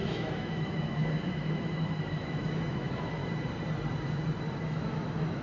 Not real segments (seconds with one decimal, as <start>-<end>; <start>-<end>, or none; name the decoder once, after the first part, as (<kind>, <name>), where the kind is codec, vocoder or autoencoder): 0.0-3.2 (autoencoder, DAC-VAE); 4.6-5.4